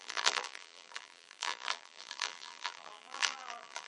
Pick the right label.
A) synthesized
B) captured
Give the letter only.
A